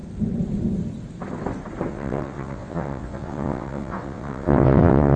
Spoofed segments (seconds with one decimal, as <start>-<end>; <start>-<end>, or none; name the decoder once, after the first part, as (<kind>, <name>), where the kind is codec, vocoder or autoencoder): 1.9-5.2 (vocoder, WaveNeXt)